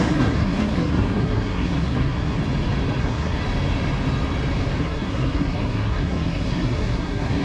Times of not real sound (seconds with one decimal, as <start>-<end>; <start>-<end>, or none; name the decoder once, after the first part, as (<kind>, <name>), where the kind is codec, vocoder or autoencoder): 0.0-2.4 (codec, SNAC); 3.0-3.4; 4.8-7.4

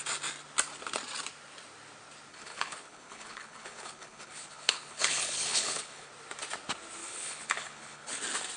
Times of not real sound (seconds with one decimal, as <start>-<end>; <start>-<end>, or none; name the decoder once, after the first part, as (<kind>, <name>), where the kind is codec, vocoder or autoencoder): 2.3-6.1 (codec, HILCodec); 7.0-8.2

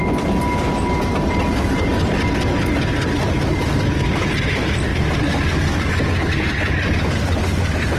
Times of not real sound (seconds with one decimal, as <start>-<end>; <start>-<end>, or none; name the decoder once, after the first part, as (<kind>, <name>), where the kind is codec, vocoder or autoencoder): none